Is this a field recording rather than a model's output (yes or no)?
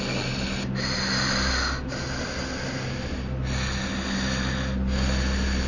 yes